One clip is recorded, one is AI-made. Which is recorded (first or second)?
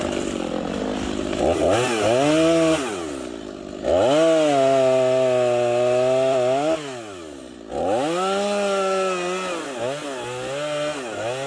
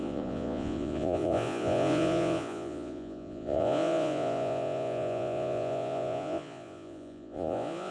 first